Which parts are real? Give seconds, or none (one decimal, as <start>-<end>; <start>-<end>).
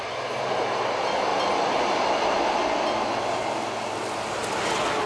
0.0-5.1